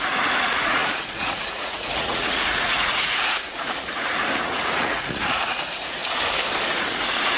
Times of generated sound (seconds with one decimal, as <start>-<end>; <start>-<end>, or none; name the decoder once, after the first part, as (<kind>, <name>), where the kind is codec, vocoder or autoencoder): 0.0-6.0 (vocoder, Vocos); 6.8-7.4